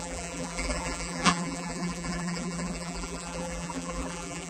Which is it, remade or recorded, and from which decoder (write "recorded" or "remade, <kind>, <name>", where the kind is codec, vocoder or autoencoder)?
remade, vocoder, BigVGAN v2